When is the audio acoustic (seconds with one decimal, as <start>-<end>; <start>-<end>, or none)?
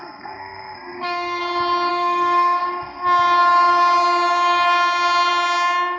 1.4-1.9; 2.6-6.0